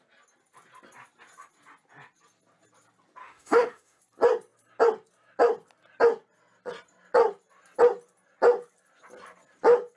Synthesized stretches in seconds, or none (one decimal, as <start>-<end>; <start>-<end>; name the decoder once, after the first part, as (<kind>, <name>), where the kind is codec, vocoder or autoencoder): 3.2-4.0 (autoencoder, DAC-VAE)